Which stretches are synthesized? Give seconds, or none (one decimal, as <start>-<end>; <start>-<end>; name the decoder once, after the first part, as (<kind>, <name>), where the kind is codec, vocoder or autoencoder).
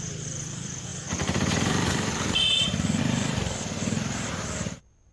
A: 0.0-5.1 (vocoder, BigVGAN v2)